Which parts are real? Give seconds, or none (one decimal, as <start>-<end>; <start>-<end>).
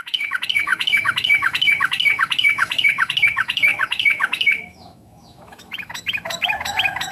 none